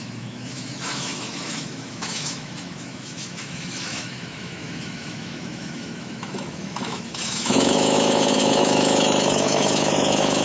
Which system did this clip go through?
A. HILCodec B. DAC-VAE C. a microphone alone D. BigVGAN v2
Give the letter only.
B